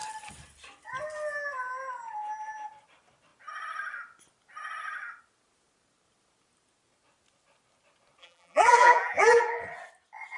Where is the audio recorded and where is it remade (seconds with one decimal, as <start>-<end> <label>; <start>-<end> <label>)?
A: 0.0-8.2 recorded; 8.2-9.4 remade; 9.4-10.4 recorded